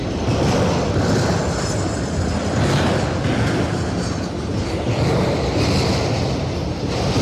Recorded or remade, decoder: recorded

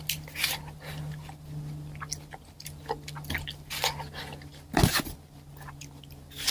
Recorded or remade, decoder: recorded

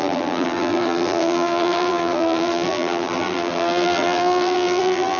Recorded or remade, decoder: remade, vocoder, BigVGAN v2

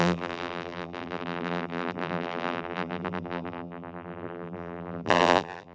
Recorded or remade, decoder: remade, vocoder, BigVGAN v2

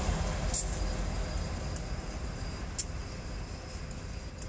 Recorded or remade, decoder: recorded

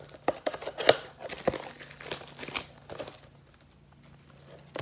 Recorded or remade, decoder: recorded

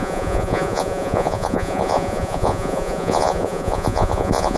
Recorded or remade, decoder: remade, vocoder, Vocos